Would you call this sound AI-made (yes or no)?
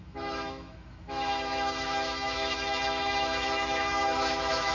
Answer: yes